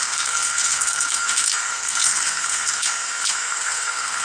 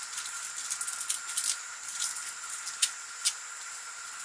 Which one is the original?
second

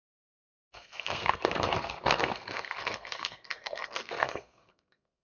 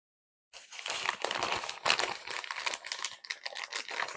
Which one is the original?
second